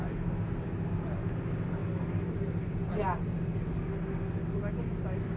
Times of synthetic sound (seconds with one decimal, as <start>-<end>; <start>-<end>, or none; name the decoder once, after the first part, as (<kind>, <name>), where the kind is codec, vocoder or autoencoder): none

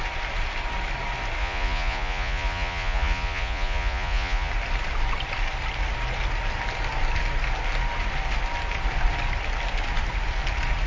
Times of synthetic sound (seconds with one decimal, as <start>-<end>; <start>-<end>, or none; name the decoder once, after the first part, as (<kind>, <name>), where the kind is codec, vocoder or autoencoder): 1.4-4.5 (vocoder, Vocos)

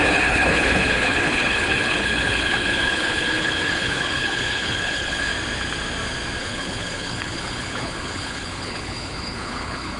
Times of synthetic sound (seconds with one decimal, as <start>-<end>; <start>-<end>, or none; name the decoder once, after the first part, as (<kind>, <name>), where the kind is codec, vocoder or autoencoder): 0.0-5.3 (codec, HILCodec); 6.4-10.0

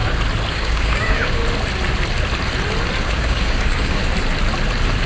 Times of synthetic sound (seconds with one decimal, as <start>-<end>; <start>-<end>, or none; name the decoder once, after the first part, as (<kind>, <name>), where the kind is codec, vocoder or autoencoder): 0.5-1.4 (codec, DAC); 3.0-4.0

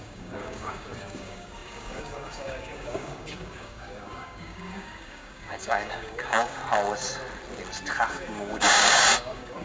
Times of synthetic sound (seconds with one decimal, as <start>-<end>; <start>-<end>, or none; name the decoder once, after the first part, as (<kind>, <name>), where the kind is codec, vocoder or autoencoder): 0.0-6.6 (codec, DAC); 8.1-9.6

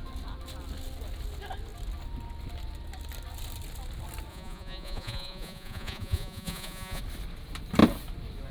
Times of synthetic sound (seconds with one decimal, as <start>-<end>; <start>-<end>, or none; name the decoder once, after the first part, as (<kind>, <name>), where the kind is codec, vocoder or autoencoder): 4.3-7.0 (vocoder, Vocos)

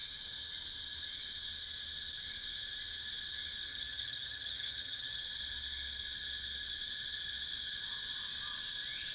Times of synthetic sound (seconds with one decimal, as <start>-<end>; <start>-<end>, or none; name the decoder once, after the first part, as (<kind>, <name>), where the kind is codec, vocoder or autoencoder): 3.7-5.2 (vocoder, HiFi-GAN)